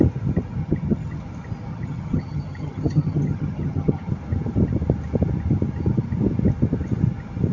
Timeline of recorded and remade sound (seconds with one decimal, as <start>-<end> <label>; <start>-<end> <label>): 0.0-0.6 recorded; 0.6-1.2 remade; 1.2-1.7 recorded; 1.7-4.1 remade; 4.1-7.5 recorded